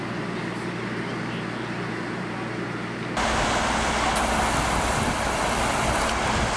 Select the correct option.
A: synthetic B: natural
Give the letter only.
B